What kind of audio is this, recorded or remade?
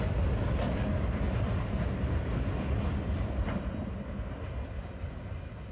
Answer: recorded